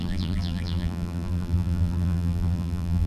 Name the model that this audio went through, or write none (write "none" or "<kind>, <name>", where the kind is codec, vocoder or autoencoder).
vocoder, BigVGAN v2